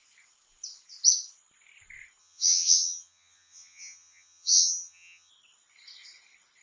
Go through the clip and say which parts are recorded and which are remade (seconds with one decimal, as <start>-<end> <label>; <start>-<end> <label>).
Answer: 0.0-2.2 recorded; 2.2-5.3 remade; 5.3-6.6 recorded